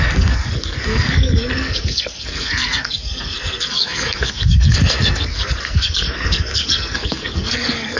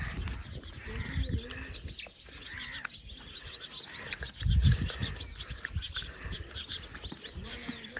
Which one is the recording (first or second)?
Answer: second